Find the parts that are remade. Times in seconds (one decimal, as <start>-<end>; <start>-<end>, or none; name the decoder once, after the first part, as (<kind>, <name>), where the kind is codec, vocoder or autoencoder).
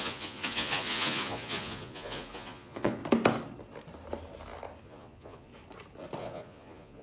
0.0-3.0 (vocoder, Vocos); 4.8-5.5; 6.2-7.0